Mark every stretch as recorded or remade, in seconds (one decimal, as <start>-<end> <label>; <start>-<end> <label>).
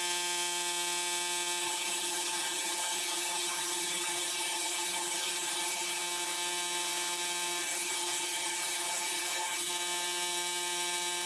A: 0.0-1.6 recorded; 1.6-6.0 remade; 6.0-7.6 recorded; 7.6-9.7 remade; 9.7-11.3 recorded